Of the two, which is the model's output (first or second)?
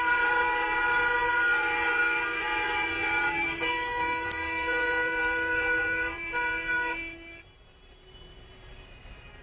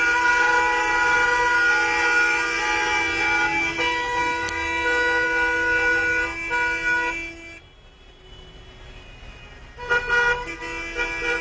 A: first